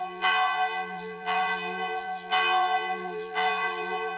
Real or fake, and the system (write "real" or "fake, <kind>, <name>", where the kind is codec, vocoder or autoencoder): fake, vocoder, BigVGAN v2